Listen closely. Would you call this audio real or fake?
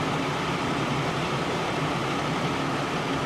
real